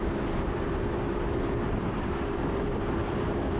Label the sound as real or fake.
fake